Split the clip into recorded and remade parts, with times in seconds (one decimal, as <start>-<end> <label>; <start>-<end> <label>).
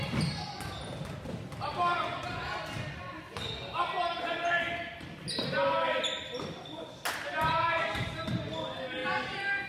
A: 0.0-9.7 recorded